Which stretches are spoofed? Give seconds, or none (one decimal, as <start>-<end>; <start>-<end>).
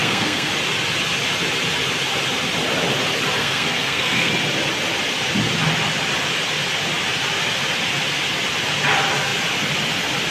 0.0-0.5; 3.4-4.3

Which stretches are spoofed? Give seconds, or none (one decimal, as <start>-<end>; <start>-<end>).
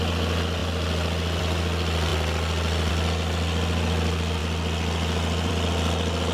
none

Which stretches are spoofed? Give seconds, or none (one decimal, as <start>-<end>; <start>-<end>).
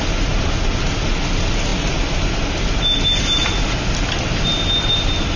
none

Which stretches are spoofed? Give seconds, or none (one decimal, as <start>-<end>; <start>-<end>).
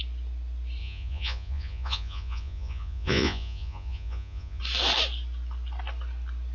0.8-4.6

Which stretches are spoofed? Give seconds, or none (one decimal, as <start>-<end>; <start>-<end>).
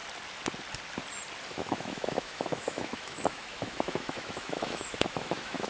1.5-5.7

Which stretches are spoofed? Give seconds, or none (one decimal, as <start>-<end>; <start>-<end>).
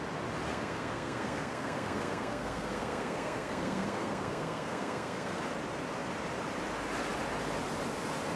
0.5-5.4